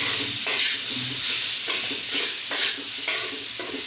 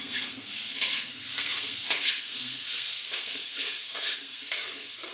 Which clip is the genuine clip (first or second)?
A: first